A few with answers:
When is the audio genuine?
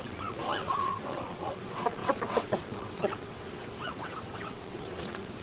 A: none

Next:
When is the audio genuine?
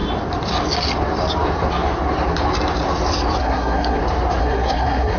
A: 0.0-3.4; 4.0-4.4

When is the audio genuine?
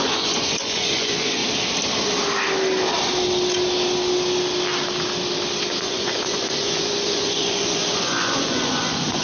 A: 1.4-5.8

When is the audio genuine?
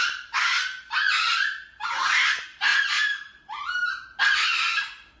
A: 0.0-5.2